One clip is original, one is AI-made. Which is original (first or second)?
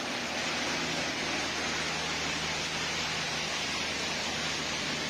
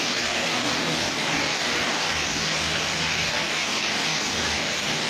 first